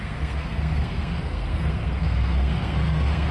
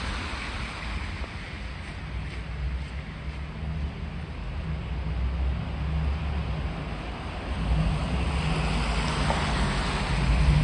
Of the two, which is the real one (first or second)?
second